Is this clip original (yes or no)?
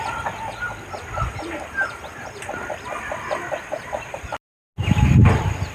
yes